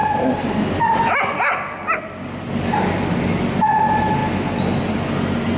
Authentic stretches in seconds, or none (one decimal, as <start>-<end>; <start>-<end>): 0.0-5.6